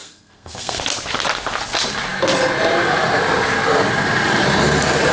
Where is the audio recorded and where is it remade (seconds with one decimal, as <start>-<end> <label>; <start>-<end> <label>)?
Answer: 0.0-0.8 remade; 0.8-5.1 recorded